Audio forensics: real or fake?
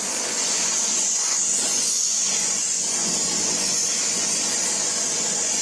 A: fake